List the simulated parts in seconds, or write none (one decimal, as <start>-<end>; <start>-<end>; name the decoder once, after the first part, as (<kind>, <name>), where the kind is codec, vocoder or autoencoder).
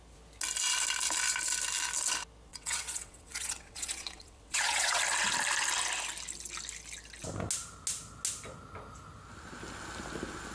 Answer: 2.5-5.0 (vocoder, WaveNeXt)